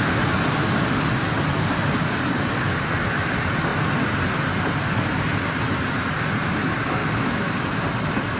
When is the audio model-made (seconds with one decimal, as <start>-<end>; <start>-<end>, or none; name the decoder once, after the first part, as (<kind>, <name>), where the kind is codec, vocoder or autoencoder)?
none

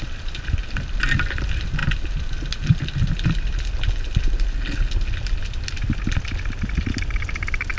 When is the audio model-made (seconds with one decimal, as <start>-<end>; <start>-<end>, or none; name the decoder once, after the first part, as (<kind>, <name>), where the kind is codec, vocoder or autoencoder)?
none

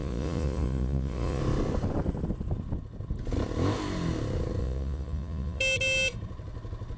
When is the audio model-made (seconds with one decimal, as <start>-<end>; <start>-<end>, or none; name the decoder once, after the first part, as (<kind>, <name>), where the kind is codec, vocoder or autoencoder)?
0.0-1.4 (vocoder, Vocos); 4.6-5.6

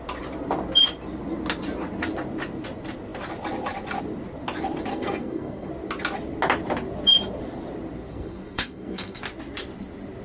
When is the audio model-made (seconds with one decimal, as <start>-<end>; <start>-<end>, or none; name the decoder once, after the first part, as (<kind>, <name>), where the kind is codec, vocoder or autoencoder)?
4.9-5.7 (codec, SNAC); 8.1-9.2

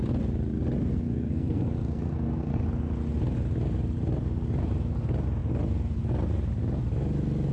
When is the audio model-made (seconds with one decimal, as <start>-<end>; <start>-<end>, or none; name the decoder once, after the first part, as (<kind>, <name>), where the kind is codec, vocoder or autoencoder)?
0.9-2.6 (codec, SNAC)

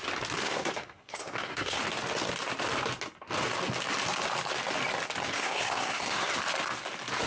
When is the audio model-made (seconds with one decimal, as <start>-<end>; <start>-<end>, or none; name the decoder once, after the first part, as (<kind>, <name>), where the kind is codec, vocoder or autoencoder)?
0.4-1.8 (codec, SNAC); 5.3-6.3

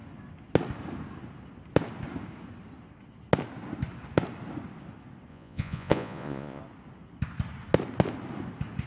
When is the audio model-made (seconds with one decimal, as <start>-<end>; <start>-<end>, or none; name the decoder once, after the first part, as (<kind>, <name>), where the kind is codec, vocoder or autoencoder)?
5.3-6.6 (vocoder, Vocos)